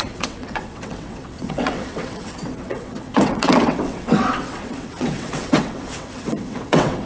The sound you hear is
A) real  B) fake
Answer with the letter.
B